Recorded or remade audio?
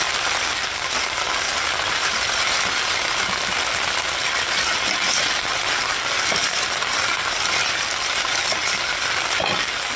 recorded